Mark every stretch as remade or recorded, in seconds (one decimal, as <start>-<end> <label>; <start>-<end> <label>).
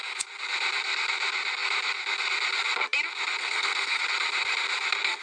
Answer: 0.0-3.4 recorded; 3.4-4.0 remade; 4.0-5.2 recorded